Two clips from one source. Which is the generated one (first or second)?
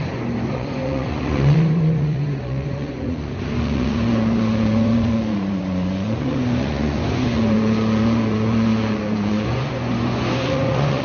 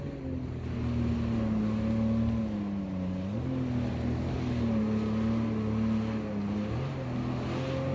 first